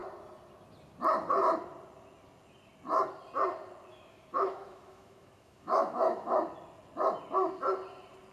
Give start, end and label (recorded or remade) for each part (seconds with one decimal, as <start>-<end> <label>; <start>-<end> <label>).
0.0-3.9 recorded; 3.9-6.4 remade; 6.4-8.3 recorded